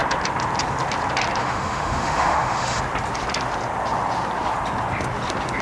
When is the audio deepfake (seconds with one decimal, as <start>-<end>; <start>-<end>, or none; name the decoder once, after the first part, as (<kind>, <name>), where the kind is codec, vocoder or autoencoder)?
1.4-2.8 (autoencoder, DAC-VAE)